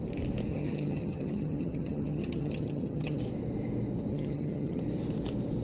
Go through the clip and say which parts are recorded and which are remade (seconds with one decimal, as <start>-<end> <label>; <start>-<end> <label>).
0.0-0.5 recorded; 0.5-3.2 remade; 3.2-4.1 recorded; 4.1-4.8 remade; 4.8-5.6 recorded